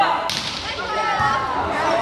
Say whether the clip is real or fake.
real